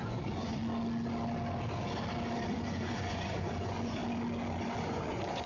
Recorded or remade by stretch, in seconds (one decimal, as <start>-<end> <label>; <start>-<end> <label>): 0.0-0.6 remade; 0.6-2.5 recorded; 2.5-4.0 remade; 4.0-4.8 recorded; 4.8-5.5 remade